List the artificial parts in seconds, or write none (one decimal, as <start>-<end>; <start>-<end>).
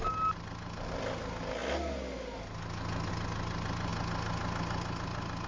none